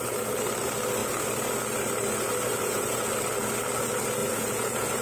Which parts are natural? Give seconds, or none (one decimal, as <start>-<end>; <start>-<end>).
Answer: 0.0-2.5; 3.1-4.2